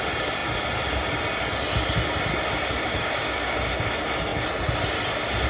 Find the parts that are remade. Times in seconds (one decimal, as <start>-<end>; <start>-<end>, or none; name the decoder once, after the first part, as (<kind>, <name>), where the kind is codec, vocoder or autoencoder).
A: 2.9-3.7 (codec, DAC)